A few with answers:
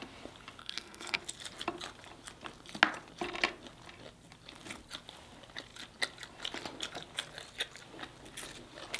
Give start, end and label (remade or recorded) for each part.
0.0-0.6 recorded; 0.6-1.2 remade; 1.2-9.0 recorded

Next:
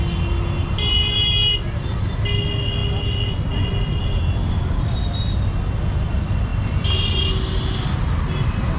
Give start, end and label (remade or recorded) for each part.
0.0-8.8 recorded

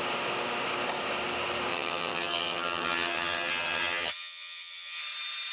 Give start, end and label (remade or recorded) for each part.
0.0-1.7 recorded; 1.7-5.0 remade; 5.0-5.5 recorded

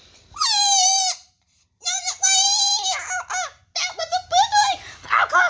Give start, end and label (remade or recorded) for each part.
0.0-2.7 remade; 2.7-4.0 recorded; 4.0-5.5 remade